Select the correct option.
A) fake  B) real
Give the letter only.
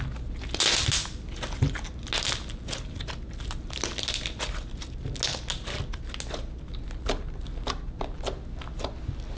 B